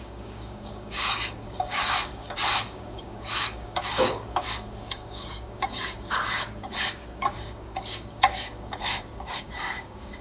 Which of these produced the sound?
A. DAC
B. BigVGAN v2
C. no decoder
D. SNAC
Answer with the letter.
A